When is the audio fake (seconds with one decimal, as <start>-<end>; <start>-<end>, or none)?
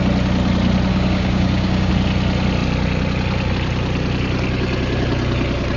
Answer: 0.9-1.9